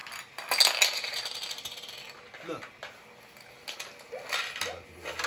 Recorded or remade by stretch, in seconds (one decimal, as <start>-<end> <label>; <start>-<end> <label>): 0.0-5.3 recorded

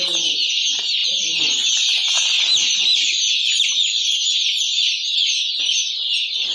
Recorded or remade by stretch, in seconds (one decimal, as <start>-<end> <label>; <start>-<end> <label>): 0.0-1.0 recorded; 1.0-4.9 remade; 4.9-6.5 recorded

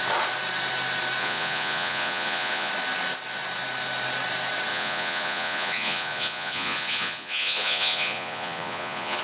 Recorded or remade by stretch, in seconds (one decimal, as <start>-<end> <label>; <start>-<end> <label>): 0.0-1.2 recorded; 1.2-2.7 remade; 2.7-4.7 recorded; 4.7-9.2 remade

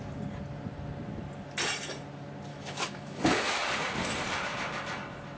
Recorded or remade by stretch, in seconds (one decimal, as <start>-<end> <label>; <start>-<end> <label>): 0.0-2.5 recorded; 2.5-3.6 remade; 3.6-5.4 recorded

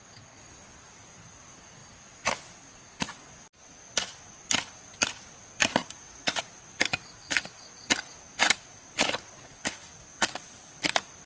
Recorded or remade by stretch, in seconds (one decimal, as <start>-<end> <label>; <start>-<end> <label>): 0.0-5.8 recorded; 5.8-6.4 remade; 6.4-11.3 recorded